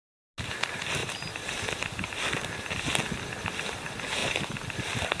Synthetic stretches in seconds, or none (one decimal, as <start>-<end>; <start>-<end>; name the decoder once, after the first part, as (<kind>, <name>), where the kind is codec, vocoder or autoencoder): 1.0-1.5 (vocoder, BigVGAN v2)